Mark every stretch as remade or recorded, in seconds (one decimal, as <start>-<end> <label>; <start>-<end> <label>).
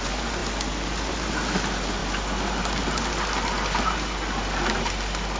0.0-5.4 recorded